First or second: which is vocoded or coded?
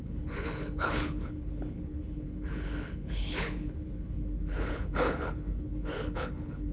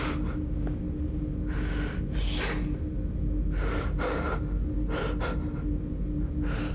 first